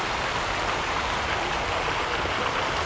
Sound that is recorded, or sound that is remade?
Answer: recorded